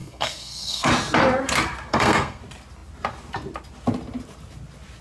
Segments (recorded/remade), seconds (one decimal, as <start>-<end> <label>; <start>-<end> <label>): 0.0-0.9 remade; 0.9-1.9 recorded; 1.9-2.4 remade; 2.4-5.0 recorded